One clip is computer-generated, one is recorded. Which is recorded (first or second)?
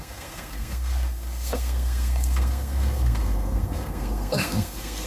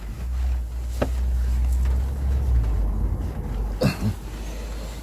second